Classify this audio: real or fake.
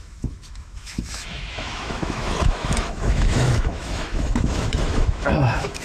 fake